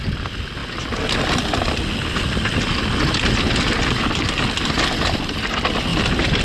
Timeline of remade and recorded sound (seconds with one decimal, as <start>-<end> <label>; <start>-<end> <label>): 0.0-6.4 recorded